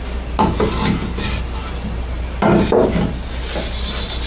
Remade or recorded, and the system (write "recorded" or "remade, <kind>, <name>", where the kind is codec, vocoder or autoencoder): recorded